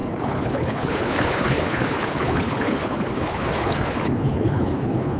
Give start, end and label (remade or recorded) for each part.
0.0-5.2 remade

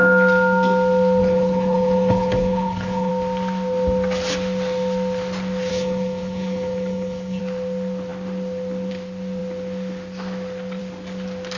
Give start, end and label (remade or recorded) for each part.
0.0-1.2 recorded; 1.2-3.1 remade; 3.1-5.7 recorded; 5.7-7.4 remade; 7.4-11.6 recorded